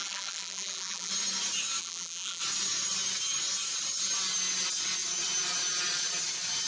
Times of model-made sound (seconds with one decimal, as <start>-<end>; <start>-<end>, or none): 0.0-1.1; 1.8-2.4